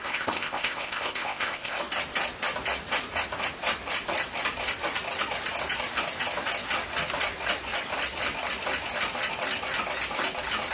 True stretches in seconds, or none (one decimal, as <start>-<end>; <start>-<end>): 1.8-10.7